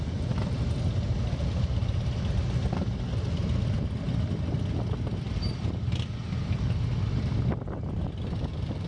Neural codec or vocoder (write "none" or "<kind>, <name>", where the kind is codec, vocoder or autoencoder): none